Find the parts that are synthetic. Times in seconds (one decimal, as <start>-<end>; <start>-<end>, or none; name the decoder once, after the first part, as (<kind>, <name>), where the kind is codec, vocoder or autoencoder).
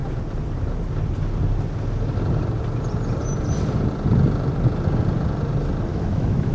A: 5.9-6.5 (autoencoder, DAC-VAE)